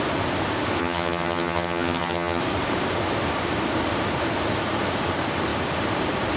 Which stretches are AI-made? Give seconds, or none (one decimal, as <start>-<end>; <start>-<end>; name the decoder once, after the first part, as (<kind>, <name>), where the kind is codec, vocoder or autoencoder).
0.8-2.4 (vocoder, HiFi-GAN)